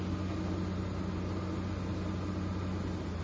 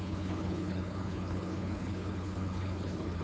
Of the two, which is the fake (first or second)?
second